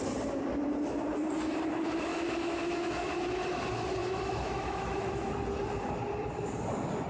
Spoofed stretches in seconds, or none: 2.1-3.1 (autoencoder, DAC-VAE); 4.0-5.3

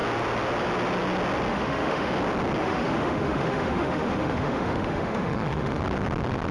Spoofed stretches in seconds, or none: 1.5-2.1 (autoencoder, DAC-VAE); 2.6-5.8